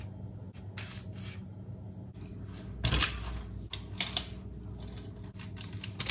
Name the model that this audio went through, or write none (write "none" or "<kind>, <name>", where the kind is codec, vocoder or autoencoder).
none